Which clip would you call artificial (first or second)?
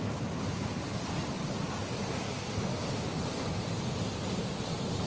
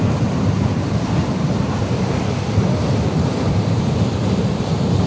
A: second